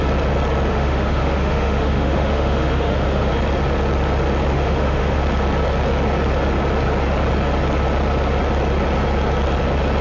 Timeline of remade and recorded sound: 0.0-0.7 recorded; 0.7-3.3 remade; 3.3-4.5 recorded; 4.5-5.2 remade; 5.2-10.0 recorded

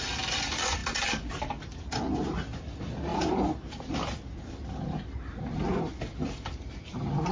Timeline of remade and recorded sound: 0.0-7.3 recorded